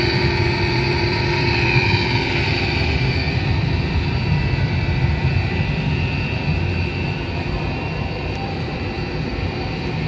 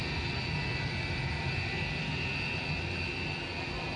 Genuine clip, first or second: second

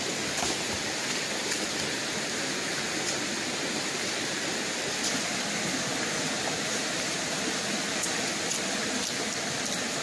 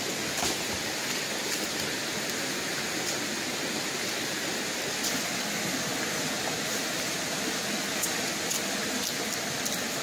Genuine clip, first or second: second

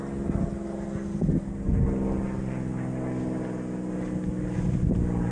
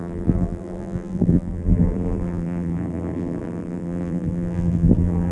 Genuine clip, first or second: first